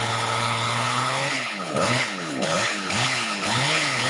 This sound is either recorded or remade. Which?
remade